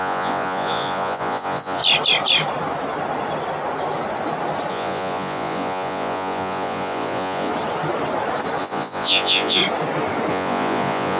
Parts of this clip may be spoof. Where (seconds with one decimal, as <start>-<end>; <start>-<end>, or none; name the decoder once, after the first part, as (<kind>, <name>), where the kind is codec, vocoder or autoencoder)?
0.0-1.8 (vocoder, Vocos); 4.7-7.5; 8.6-9.6; 10.3-11.2